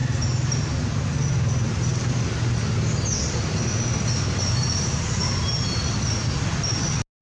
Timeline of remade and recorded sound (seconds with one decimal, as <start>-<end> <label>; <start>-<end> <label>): 0.0-7.2 recorded